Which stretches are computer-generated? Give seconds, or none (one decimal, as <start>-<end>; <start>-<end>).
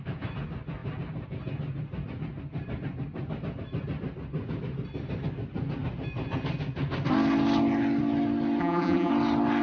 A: 8.6-9.1